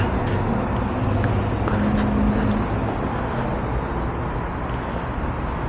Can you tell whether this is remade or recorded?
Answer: recorded